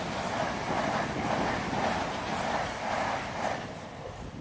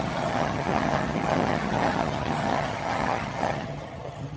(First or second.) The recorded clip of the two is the first